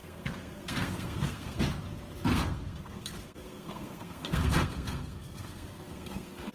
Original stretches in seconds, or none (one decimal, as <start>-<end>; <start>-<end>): 1.6-2.3